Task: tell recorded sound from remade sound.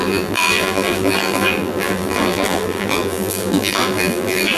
remade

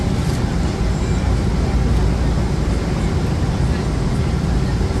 recorded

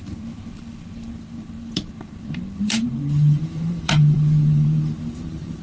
remade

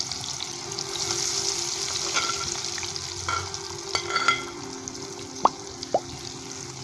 recorded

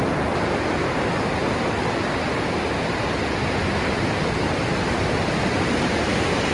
recorded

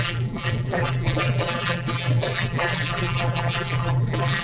remade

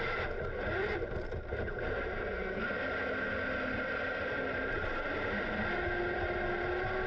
recorded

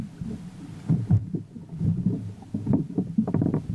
remade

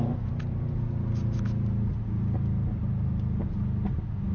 recorded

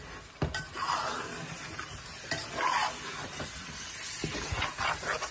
recorded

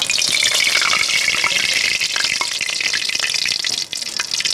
recorded